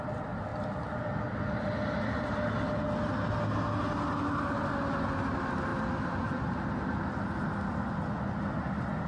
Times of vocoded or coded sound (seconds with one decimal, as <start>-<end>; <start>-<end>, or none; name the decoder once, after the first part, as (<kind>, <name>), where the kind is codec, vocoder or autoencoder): none